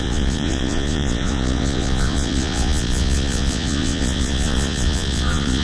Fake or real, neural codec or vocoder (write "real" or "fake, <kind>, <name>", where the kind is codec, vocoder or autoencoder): fake, vocoder, Vocos